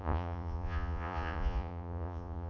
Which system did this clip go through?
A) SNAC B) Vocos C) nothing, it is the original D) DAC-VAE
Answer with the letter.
B